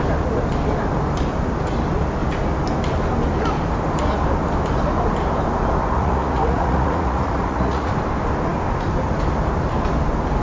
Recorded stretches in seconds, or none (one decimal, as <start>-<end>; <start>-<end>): 0.0-5.8; 7.9-10.4